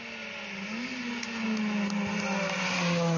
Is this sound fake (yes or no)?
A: no